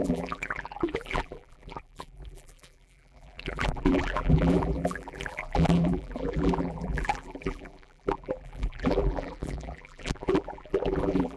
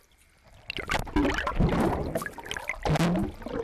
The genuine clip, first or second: second